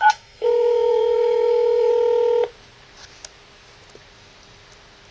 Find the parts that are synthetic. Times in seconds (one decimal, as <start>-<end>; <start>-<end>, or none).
0.0-1.9